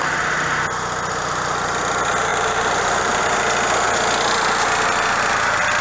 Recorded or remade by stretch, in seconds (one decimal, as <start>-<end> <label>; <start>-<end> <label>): 0.0-2.3 recorded; 2.3-3.2 remade; 3.2-5.8 recorded